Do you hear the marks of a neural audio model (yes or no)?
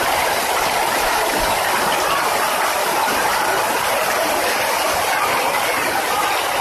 no